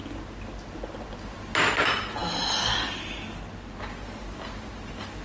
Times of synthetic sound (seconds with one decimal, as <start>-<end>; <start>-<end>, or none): none